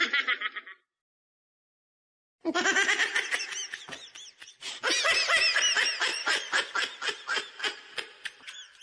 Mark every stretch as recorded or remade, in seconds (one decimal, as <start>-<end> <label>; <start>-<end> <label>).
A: 0.0-6.1 recorded; 6.1-6.7 remade; 6.7-8.8 recorded